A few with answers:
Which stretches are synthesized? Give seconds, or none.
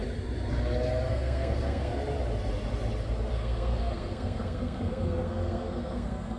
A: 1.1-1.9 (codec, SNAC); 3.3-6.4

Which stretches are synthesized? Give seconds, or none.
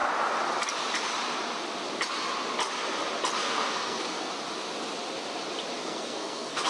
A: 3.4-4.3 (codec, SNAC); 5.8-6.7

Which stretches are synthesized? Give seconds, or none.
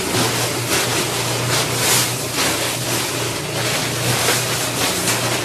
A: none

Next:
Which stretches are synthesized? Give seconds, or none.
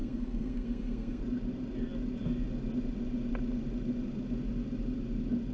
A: 0.0-1.2 (codec, SNAC)